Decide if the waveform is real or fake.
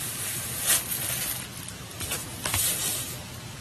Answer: real